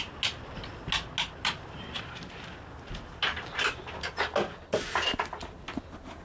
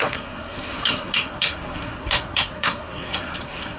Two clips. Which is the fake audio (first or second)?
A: second